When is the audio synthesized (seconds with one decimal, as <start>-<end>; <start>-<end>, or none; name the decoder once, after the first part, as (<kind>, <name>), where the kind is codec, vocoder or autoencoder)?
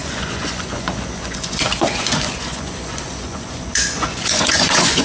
0.0-5.0 (vocoder, Vocos)